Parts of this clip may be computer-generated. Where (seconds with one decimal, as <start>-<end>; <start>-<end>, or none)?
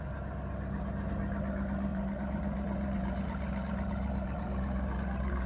1.9-5.5